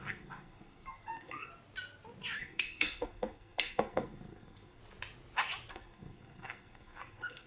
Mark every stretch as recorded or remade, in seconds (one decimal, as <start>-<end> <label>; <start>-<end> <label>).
0.0-1.5 remade; 1.5-2.4 recorded; 2.4-4.8 remade; 4.8-5.7 recorded; 5.7-7.5 remade